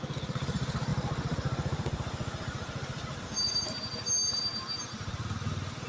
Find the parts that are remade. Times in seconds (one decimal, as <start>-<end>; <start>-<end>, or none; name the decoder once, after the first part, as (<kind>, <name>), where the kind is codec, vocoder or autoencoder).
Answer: 0.9-4.4 (vocoder, BigVGAN v2)